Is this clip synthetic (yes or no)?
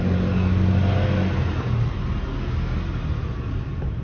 no